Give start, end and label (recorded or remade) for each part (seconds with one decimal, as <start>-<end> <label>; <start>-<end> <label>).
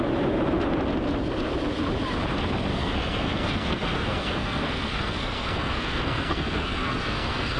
0.0-2.7 recorded; 2.7-7.6 remade